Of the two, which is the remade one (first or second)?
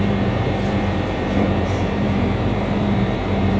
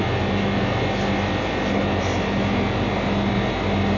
first